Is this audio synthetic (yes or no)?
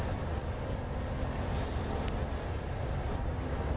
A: no